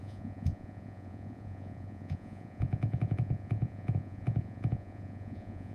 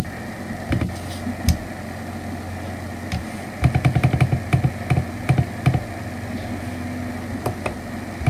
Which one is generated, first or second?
first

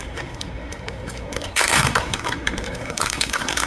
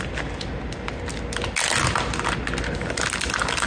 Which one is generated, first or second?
first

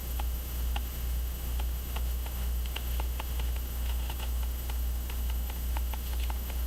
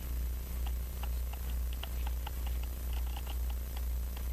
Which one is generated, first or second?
first